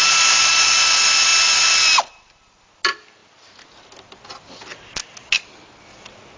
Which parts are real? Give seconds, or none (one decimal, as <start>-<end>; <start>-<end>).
0.0-6.4